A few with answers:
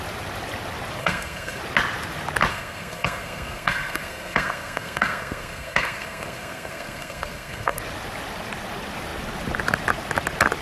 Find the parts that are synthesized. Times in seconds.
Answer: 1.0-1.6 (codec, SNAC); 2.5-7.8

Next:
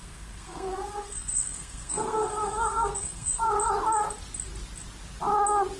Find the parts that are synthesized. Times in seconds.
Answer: 0.0-3.5 (codec, SNAC)

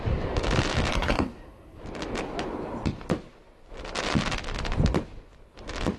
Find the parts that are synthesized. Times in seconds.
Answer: 0.9-1.8 (codec, SNAC)

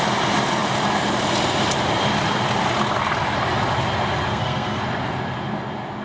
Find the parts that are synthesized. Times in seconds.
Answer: 4.3-4.8 (codec, SNAC)

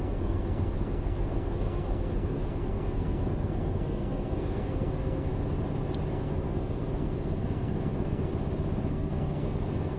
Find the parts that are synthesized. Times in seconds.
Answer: 0.0-5.3 (codec, SNAC); 6.1-8.3; 8.9-10.0